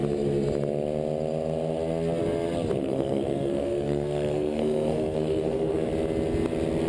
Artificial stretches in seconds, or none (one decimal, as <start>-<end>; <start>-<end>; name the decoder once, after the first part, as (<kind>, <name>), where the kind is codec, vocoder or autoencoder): 2.8-5.9 (codec, SNAC)